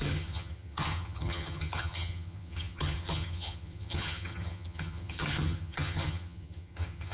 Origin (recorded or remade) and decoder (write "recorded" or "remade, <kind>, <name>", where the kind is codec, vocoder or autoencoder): remade, vocoder, HiFi-GAN